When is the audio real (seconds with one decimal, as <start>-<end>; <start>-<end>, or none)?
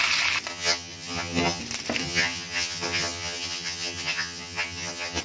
0.0-0.5; 1.6-2.0